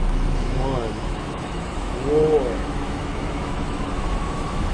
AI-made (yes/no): yes